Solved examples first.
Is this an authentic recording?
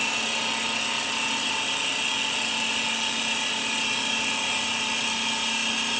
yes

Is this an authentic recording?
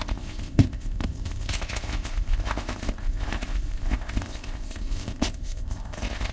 no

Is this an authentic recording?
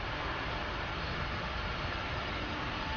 yes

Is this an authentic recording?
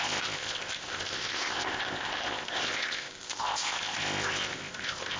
no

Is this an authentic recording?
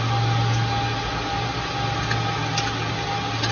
yes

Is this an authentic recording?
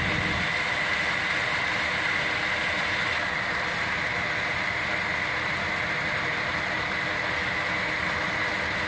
yes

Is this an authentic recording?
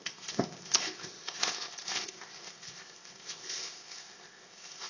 no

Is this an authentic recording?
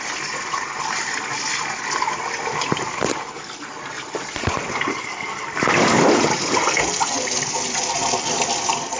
yes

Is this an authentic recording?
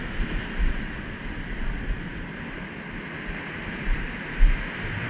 yes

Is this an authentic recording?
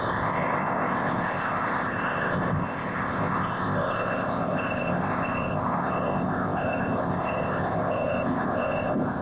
no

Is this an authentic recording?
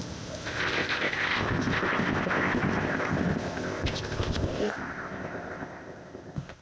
no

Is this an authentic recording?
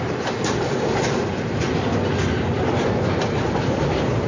yes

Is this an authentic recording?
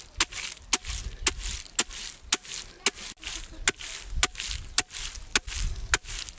yes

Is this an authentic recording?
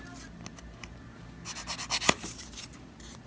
yes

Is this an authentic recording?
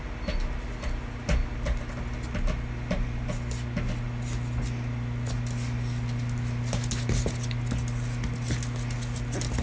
yes